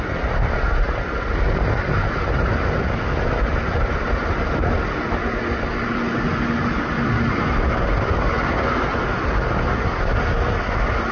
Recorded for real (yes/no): yes